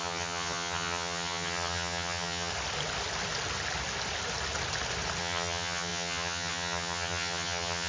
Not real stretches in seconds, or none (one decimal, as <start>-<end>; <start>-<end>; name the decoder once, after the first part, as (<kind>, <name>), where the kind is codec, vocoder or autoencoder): 0.0-2.5 (vocoder, HiFi-GAN); 5.2-7.9